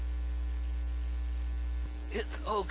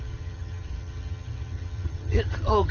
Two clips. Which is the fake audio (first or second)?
second